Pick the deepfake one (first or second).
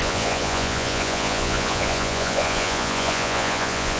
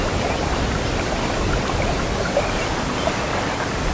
first